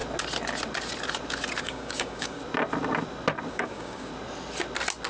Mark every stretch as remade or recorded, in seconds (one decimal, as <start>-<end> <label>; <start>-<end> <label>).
0.0-1.6 recorded; 1.6-2.4 remade; 2.4-3.5 recorded; 3.5-4.1 remade; 4.1-5.1 recorded